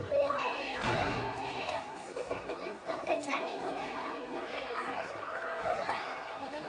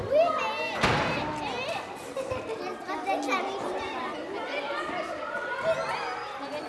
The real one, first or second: second